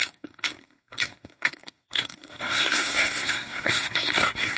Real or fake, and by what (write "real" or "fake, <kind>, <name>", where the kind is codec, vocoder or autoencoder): fake, codec, SNAC